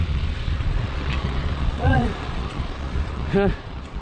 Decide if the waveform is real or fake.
fake